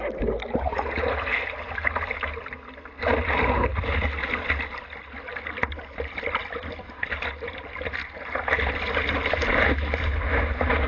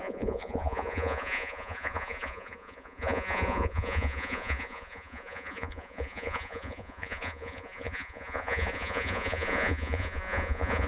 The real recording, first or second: first